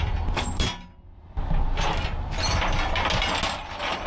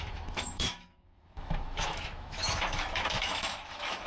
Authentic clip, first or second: first